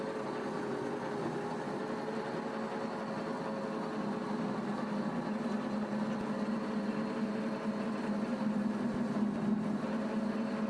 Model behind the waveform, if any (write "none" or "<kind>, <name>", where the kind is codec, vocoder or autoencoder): none